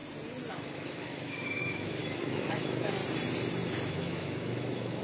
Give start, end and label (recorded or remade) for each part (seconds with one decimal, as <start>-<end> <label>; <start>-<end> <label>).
0.0-0.5 recorded; 0.5-3.0 remade; 3.0-3.9 recorded; 3.9-5.0 remade